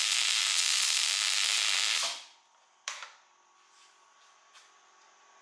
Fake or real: fake